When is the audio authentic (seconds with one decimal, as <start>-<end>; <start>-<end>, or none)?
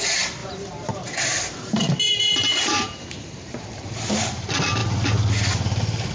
0.0-0.4; 4.1-6.1